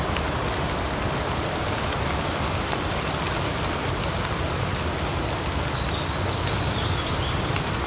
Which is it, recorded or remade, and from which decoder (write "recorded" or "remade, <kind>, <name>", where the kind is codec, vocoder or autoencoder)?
recorded